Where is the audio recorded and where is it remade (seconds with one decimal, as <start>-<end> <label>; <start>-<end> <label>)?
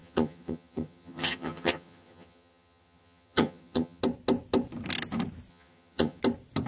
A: 0.0-4.0 remade; 4.0-5.5 recorded; 5.5-6.2 remade; 6.2-6.7 recorded